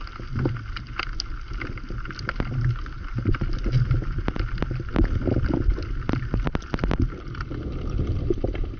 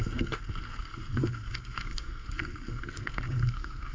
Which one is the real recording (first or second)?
first